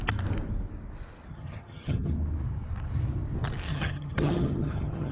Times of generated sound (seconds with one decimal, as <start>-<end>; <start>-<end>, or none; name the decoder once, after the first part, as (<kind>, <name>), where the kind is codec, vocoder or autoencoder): 1.3-2.1 (vocoder, HiFi-GAN); 3.7-5.1